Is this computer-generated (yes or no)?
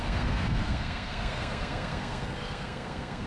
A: yes